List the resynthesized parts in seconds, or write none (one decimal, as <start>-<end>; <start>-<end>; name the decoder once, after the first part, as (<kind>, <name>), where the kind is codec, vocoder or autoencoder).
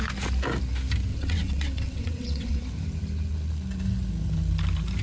1.1-2.6 (vocoder, WaveNeXt)